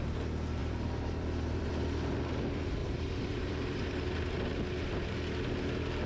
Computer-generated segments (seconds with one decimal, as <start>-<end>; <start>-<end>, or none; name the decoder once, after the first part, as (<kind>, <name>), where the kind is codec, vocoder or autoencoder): 0.6-1.7 (vocoder, BigVGAN v2); 2.8-3.9